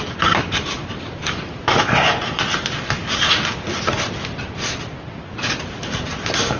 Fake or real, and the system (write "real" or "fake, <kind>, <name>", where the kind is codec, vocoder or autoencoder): real